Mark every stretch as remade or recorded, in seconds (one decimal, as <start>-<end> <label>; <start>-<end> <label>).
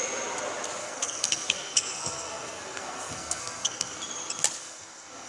0.0-0.8 recorded; 0.8-4.0 remade; 4.0-4.6 recorded; 4.6-5.3 remade